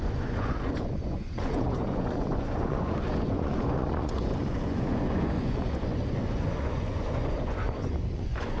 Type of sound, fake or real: fake